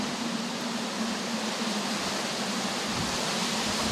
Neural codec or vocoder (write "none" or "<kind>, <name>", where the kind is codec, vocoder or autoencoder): none